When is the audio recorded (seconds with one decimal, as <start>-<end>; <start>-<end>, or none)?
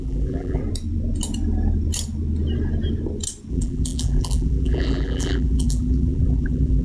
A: 0.6-3.5